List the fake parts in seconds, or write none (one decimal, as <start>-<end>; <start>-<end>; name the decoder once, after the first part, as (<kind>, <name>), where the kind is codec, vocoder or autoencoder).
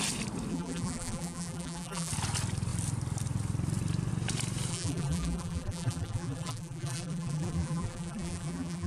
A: 0.5-2.1 (vocoder, BigVGAN v2); 4.7-8.9